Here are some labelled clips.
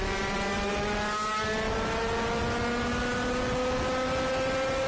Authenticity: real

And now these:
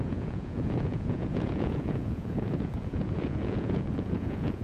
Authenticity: fake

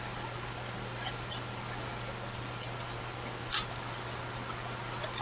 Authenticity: real